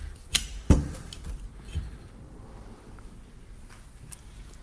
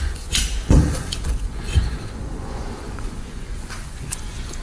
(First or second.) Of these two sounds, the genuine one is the first